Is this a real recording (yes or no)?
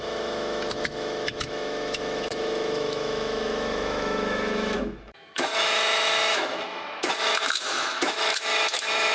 no